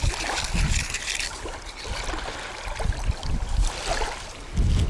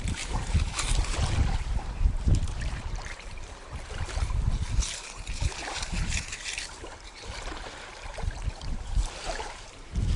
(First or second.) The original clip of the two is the first